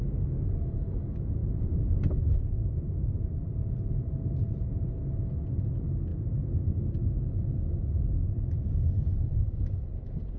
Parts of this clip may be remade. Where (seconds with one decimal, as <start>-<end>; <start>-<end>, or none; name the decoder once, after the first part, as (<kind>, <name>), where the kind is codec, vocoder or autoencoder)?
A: 1.4-4.9 (vocoder, BigVGAN v2); 6.1-6.8

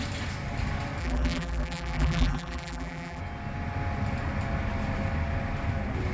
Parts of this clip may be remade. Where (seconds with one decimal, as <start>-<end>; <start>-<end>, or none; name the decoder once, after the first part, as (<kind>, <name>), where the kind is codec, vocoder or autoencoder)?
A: 1.0-3.2 (vocoder, BigVGAN v2)

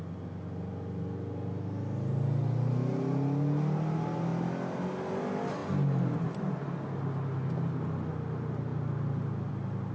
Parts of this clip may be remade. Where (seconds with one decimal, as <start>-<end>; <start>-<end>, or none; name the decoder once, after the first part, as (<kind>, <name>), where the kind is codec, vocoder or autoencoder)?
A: none

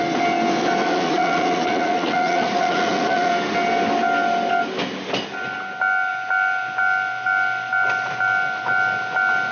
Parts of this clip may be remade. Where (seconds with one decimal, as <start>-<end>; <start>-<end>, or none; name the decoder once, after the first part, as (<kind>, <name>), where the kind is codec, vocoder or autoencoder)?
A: 0.8-3.3 (vocoder, Vocos)

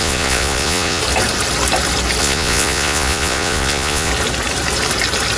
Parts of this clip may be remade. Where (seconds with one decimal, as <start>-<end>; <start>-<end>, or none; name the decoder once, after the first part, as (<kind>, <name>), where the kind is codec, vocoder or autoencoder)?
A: 0.0-1.0 (vocoder, Vocos); 2.2-4.1

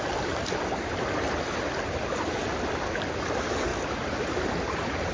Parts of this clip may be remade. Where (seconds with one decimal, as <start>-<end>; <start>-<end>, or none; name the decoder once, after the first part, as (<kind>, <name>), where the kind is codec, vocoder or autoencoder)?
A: none